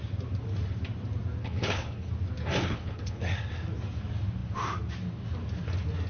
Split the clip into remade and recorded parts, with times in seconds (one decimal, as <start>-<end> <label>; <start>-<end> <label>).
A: 0.0-1.4 recorded; 1.4-2.1 remade; 2.1-2.6 recorded; 2.6-3.2 remade; 3.2-6.1 recorded